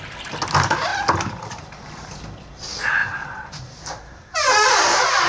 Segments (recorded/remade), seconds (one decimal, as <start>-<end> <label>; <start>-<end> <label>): 0.0-5.3 recorded